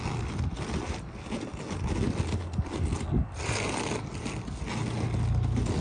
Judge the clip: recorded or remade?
recorded